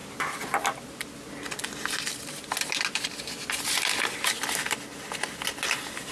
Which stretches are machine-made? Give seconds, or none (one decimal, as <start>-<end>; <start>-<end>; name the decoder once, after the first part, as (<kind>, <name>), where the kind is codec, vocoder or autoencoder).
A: none

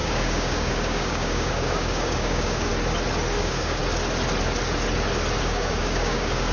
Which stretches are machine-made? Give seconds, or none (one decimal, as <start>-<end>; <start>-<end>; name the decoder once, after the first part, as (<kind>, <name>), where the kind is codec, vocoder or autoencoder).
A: 0.0-2.7 (codec, DAC); 3.4-3.8; 5.4-6.5

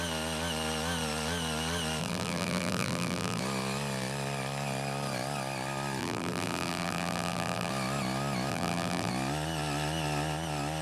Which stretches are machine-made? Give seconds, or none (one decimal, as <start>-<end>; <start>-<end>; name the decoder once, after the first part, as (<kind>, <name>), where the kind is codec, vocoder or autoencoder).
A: 2.0-3.4 (vocoder, BigVGAN v2); 6.0-7.7; 8.5-9.1

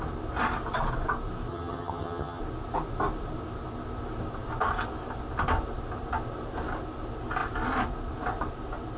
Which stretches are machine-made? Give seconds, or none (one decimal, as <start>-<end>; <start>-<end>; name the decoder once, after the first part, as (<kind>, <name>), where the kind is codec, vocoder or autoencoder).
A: 1.5-2.4 (vocoder, HiFi-GAN)

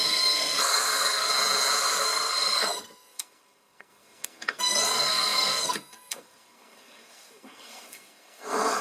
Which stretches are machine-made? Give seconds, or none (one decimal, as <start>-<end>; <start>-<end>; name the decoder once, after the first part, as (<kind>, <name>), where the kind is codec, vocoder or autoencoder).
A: 0.0-1.3 (codec, SNAC); 1.8-8.8

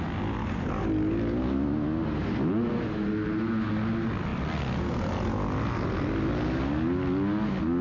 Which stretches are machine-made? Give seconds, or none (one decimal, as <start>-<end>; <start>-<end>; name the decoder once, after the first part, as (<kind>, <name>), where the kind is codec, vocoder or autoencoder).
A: none

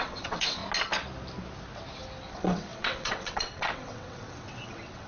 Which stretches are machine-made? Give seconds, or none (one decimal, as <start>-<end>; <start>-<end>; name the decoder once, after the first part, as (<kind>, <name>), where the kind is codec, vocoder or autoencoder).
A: 0.0-0.6 (vocoder, WaveNeXt); 2.3-5.1